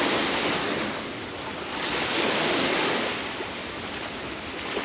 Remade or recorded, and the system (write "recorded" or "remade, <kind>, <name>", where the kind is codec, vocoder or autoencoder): recorded